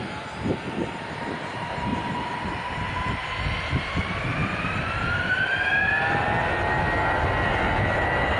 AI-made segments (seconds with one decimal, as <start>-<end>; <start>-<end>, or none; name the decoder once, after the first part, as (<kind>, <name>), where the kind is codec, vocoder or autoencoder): none